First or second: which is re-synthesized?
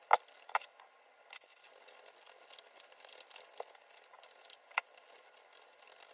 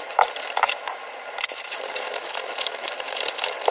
second